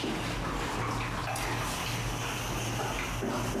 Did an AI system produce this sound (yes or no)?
no